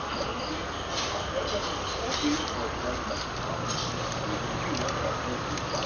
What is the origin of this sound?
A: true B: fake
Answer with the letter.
A